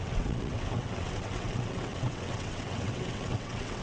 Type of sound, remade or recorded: remade